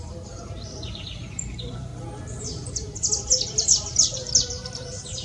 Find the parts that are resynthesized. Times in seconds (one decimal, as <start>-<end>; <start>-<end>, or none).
0.0-1.9; 2.4-5.2

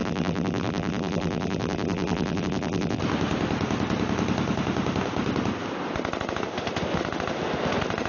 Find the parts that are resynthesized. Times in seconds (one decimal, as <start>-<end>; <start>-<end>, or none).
0.0-3.0

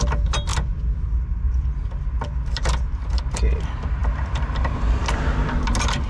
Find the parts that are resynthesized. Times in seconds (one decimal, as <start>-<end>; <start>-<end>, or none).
none

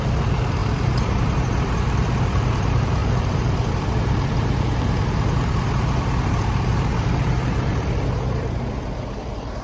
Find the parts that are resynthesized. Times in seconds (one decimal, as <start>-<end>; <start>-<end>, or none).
0.0-9.6